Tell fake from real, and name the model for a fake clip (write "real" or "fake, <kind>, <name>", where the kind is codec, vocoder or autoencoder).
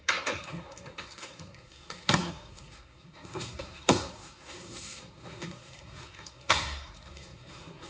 fake, codec, SNAC